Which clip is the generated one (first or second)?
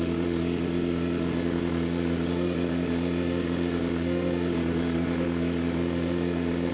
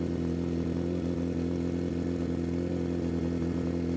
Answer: first